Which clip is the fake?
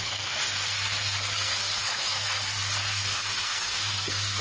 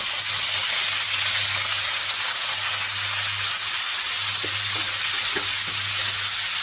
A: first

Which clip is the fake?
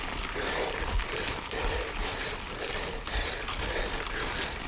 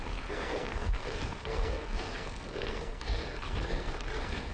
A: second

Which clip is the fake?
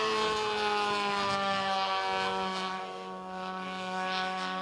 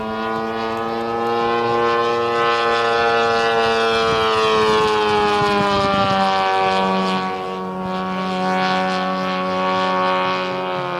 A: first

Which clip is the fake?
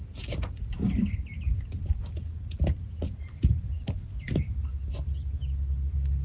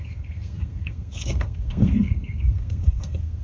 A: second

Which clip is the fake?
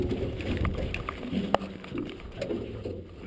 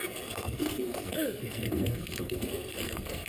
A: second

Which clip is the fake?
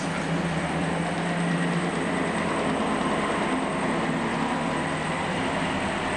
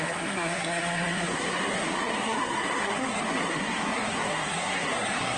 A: second